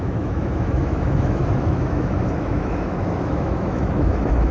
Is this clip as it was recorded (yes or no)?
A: no